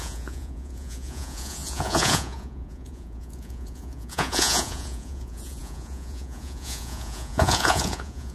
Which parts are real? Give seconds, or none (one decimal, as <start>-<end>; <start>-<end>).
none